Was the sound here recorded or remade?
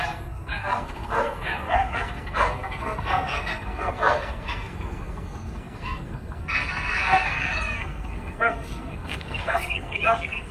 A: remade